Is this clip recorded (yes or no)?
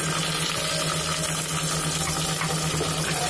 yes